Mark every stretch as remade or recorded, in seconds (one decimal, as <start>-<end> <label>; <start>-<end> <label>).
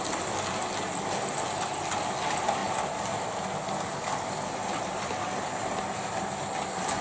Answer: 0.0-7.0 recorded